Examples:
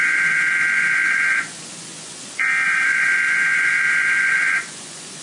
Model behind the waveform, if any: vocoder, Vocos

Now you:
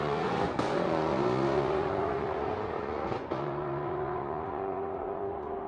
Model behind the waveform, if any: vocoder, Vocos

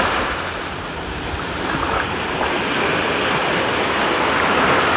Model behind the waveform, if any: none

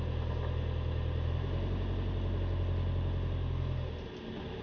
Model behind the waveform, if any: none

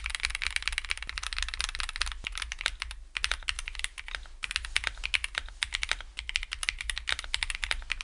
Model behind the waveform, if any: none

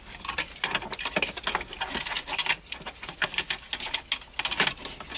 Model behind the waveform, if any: none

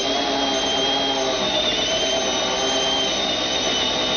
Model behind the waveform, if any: none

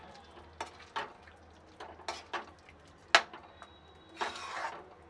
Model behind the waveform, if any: none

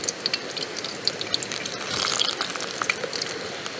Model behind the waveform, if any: none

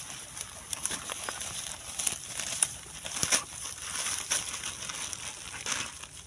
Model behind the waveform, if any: none